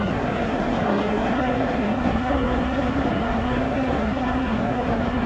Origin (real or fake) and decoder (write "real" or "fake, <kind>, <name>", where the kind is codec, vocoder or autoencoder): fake, codec, SNAC